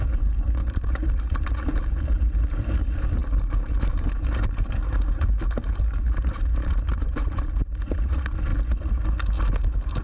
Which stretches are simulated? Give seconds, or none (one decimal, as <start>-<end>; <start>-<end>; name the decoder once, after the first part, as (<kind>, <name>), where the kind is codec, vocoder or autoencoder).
0.0-8.5 (vocoder, BigVGAN v2); 9.6-10.0

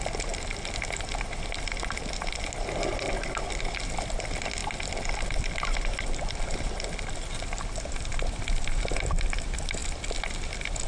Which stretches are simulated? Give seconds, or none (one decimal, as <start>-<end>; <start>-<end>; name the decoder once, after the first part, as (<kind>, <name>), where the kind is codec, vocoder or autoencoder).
none

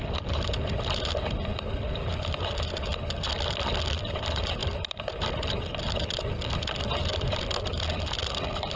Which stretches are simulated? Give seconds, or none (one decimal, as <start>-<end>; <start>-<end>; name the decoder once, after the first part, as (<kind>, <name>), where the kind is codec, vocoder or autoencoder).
1.5-2.5 (vocoder, BigVGAN v2); 4.6-5.1

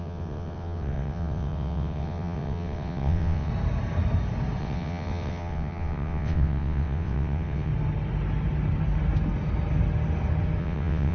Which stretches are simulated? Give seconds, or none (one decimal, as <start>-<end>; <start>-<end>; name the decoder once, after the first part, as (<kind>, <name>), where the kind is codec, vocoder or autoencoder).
0.0-3.5 (vocoder, WaveNeXt); 4.6-7.7; 10.6-11.1

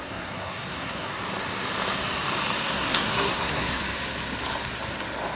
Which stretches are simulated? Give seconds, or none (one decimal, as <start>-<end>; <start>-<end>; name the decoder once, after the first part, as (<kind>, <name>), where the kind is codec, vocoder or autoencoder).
0.0-1.2 (codec, SNAC); 2.6-3.8

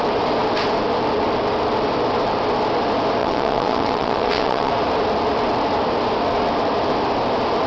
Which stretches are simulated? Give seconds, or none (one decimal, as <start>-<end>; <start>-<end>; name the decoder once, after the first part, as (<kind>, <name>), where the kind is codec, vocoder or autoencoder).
3.2-4.7 (vocoder, WaveNeXt)

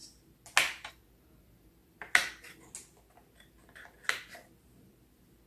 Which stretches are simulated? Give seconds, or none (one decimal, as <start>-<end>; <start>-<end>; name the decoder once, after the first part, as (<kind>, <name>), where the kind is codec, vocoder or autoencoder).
none

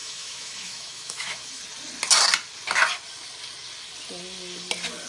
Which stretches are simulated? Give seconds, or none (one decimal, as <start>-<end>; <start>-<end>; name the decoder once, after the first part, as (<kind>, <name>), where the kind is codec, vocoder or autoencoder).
0.0-1.6 (autoencoder, DAC-VAE)